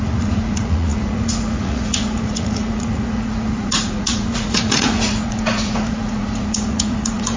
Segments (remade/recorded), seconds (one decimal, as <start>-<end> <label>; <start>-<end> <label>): 0.0-7.4 remade